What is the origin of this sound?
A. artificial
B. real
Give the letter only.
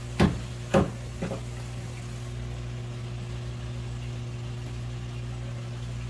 B